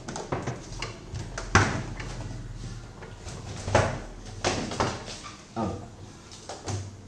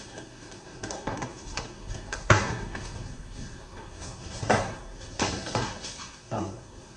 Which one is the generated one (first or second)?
second